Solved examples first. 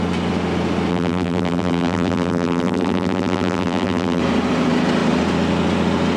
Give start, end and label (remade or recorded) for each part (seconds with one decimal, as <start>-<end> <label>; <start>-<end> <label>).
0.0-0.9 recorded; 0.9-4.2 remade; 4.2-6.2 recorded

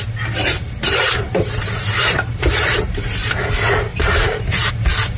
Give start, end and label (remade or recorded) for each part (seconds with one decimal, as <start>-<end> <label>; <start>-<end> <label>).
0.0-0.4 recorded; 0.4-3.5 remade; 3.5-3.9 recorded; 3.9-4.7 remade; 4.7-5.2 recorded

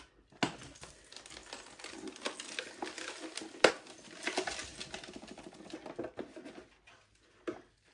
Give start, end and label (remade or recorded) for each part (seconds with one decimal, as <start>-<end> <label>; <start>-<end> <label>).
0.0-7.9 recorded

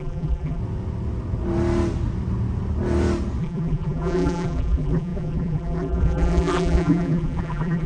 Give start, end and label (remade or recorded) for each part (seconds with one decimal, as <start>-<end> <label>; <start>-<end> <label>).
0.0-0.6 remade; 0.6-3.4 recorded; 3.4-7.9 remade

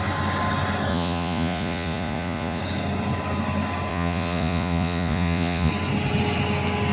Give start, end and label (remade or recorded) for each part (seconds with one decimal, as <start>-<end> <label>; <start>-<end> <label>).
0.0-0.9 recorded; 0.9-2.6 remade; 2.6-3.9 recorded; 3.9-5.7 remade; 5.7-6.9 recorded